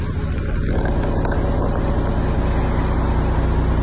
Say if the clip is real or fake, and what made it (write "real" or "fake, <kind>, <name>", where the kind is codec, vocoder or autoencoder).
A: real